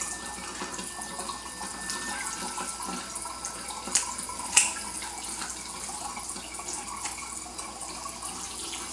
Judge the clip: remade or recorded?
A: recorded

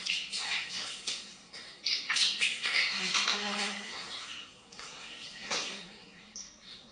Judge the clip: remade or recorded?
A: remade